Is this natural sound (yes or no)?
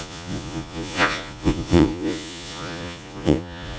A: no